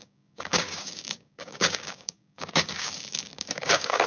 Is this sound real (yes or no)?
no